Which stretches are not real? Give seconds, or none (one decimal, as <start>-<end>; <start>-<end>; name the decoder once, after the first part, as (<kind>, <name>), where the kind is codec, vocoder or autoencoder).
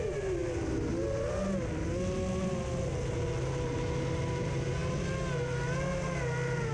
none